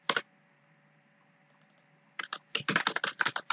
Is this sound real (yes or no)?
yes